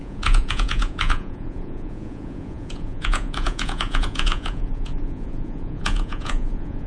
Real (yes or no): no